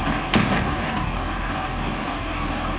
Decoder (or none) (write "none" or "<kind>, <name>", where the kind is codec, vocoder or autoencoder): codec, DAC